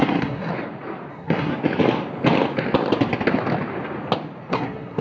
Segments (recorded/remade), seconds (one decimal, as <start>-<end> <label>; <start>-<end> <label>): 0.0-0.5 remade; 0.5-1.1 recorded; 1.1-1.5 remade; 1.5-4.5 recorded; 4.5-5.0 remade